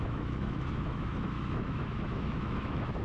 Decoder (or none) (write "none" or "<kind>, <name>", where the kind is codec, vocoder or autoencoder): autoencoder, DAC-VAE